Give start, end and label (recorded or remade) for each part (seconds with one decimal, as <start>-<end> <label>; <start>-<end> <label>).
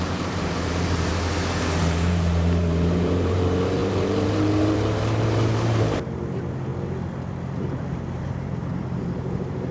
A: 0.0-1.1 remade; 1.1-1.8 recorded; 1.8-6.7 remade; 6.7-7.9 recorded; 7.9-9.7 remade